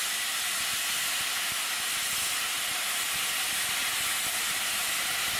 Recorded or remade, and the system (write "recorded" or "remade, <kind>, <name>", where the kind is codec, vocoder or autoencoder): recorded